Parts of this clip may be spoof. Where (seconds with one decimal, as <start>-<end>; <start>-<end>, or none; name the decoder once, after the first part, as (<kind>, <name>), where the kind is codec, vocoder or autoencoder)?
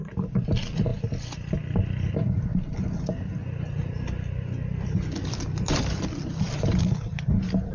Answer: none